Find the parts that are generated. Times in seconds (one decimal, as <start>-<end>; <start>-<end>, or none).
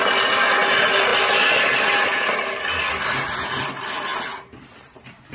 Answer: none